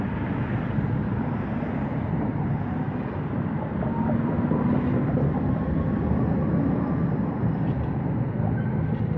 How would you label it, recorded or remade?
recorded